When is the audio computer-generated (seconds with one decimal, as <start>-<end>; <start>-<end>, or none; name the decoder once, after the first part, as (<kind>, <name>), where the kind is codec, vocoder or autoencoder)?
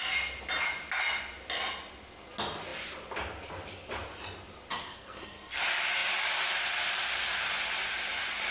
4.7-5.6 (codec, SNAC)